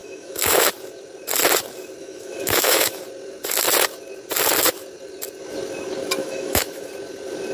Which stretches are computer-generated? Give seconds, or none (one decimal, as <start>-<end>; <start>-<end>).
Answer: 0.0-0.7; 2.0-3.0; 6.2-6.9